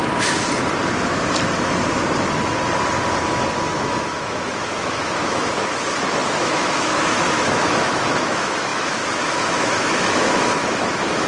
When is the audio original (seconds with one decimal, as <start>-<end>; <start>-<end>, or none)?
0.0-3.2